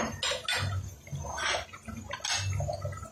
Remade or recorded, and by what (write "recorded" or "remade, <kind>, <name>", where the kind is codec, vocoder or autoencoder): recorded